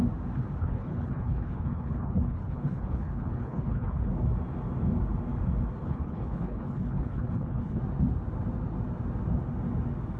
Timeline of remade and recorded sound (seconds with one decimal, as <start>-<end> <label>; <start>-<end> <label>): 0.0-0.6 recorded; 0.6-4.1 remade; 4.1-5.8 recorded; 5.8-7.8 remade; 7.8-10.2 recorded